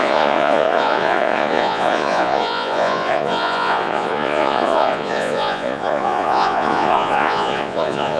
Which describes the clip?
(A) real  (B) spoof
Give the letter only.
B